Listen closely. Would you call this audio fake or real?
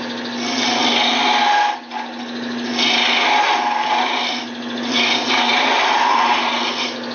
real